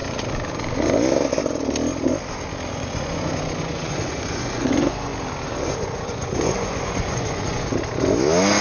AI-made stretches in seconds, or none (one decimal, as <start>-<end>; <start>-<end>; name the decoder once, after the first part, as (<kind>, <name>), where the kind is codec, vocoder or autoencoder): 2.7-5.1 (vocoder, Vocos); 5.8-7.7